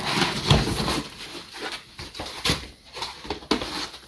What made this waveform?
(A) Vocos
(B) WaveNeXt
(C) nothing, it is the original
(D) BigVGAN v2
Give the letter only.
C